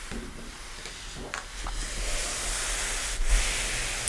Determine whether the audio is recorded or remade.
recorded